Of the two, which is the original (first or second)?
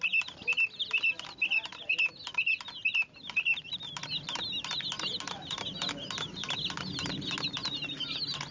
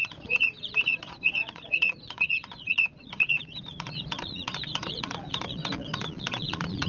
first